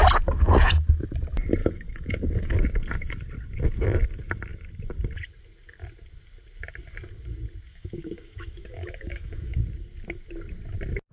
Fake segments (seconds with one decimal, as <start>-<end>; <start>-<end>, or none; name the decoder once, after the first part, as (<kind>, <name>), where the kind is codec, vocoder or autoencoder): 1.6-2.6 (autoencoder, DAC-VAE); 7.7-9.6